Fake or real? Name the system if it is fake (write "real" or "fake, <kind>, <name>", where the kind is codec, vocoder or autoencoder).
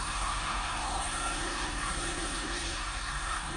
fake, codec, SNAC